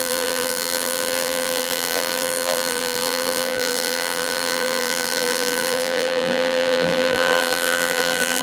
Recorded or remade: remade